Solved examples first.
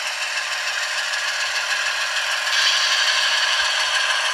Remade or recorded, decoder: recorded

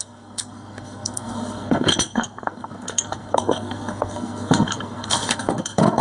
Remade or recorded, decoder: remade, codec, SNAC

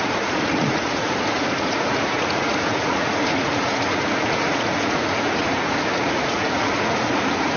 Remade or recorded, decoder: remade, vocoder, Vocos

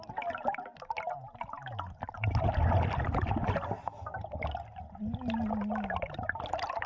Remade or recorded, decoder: recorded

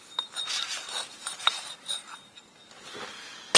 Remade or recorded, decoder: recorded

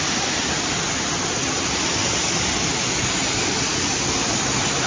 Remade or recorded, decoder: recorded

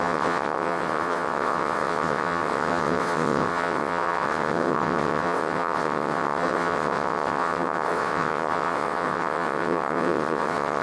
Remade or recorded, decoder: remade, vocoder, WaveNeXt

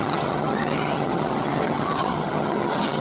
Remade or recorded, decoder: remade, vocoder, HiFi-GAN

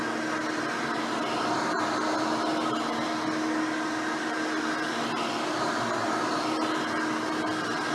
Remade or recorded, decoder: recorded